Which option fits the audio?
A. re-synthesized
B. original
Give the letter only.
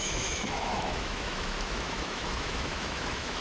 A